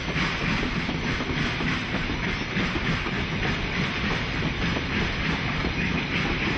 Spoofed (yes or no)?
no